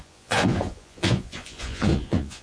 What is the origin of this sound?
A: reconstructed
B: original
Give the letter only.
A